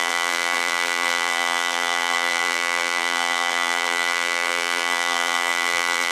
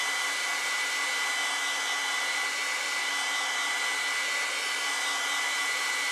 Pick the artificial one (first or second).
first